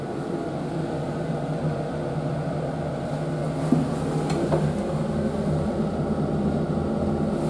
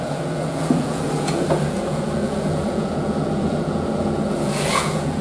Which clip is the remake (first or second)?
second